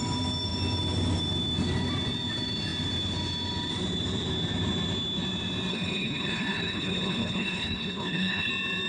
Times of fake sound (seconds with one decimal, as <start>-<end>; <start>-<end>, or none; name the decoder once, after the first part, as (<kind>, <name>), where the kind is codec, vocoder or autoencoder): 5.7-8.5 (codec, HILCodec)